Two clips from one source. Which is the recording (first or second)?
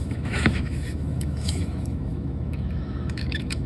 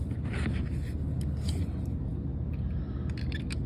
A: second